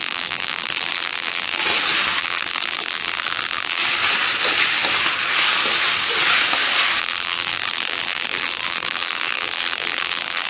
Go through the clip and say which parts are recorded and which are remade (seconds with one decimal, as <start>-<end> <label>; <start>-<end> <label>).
0.0-1.6 remade; 1.6-2.2 recorded; 2.2-3.8 remade; 3.8-7.0 recorded; 7.0-10.5 remade